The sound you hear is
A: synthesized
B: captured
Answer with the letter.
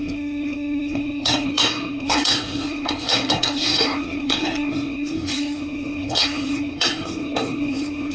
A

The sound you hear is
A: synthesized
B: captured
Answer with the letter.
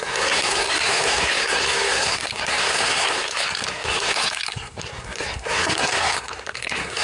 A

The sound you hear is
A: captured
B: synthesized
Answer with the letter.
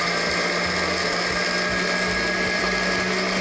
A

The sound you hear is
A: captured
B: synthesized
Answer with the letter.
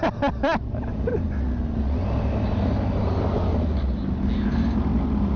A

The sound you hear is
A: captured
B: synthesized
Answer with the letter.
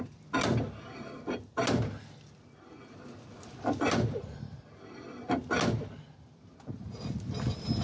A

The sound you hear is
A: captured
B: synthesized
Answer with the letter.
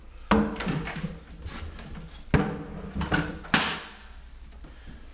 A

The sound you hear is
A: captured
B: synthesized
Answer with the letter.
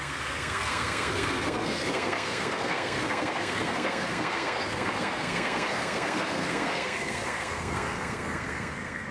B